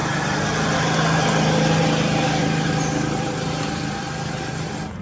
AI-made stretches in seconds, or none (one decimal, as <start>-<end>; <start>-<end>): 2.4-4.5